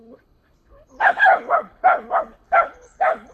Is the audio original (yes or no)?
no